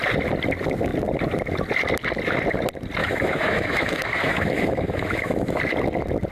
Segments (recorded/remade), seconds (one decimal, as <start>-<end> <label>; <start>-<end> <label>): 0.0-3.0 recorded; 3.0-5.6 remade; 5.6-6.3 recorded